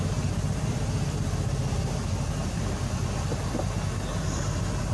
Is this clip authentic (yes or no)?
yes